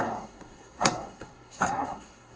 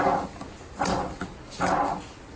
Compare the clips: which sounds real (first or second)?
second